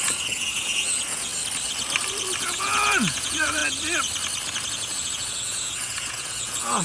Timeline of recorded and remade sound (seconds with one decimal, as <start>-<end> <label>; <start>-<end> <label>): 0.0-1.3 remade; 1.3-2.4 recorded; 2.4-3.6 remade; 3.6-4.7 recorded; 4.7-6.8 remade